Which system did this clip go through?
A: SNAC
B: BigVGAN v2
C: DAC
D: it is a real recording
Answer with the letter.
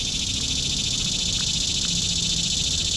D